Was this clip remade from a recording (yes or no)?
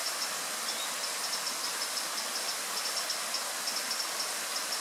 no